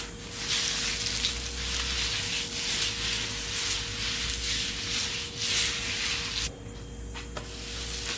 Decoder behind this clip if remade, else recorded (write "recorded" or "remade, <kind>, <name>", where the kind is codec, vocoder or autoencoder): recorded